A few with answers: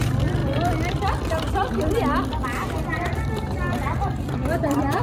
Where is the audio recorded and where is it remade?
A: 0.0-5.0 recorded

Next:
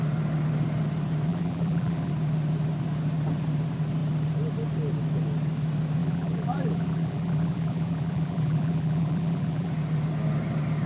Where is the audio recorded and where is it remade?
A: 0.0-1.3 recorded; 1.3-2.1 remade; 2.1-6.0 recorded; 6.0-9.7 remade; 9.7-10.9 recorded

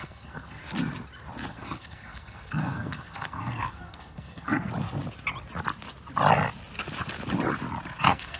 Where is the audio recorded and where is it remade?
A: 0.0-0.6 remade; 0.6-1.5 recorded; 1.5-4.7 remade; 4.7-8.0 recorded; 8.0-8.4 remade

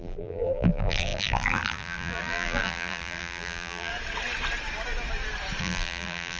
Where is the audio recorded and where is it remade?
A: 0.0-3.9 remade; 3.9-5.6 recorded; 5.6-6.4 remade

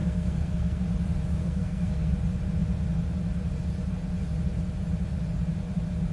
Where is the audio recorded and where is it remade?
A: 0.0-0.8 remade; 0.8-1.4 recorded; 1.4-2.1 remade; 2.1-6.1 recorded

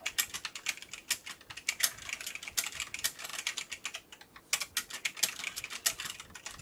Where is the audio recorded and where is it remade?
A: 0.0-6.6 recorded